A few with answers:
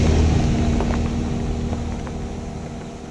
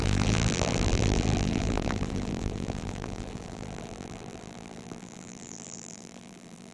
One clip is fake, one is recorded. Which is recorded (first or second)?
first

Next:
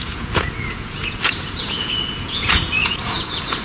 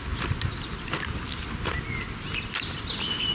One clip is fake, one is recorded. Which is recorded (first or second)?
second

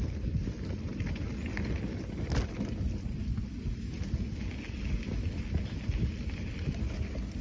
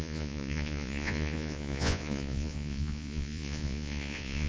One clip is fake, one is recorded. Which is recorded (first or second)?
first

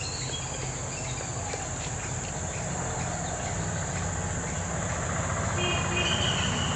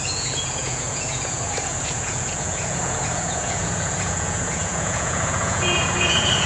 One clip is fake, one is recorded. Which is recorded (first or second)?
first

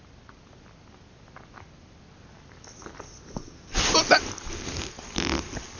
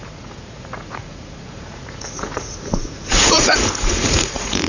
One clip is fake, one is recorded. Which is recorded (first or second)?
first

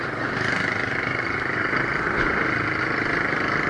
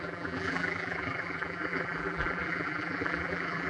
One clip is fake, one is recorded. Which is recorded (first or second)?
first